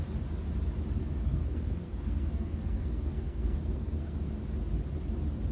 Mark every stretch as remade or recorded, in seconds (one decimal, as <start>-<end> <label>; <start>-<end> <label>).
0.0-1.0 recorded; 1.0-4.3 remade; 4.3-5.5 recorded